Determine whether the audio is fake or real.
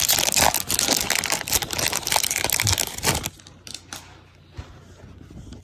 real